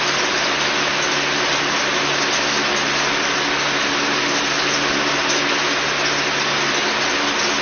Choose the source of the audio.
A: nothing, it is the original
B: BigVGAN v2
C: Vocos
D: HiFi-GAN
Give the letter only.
A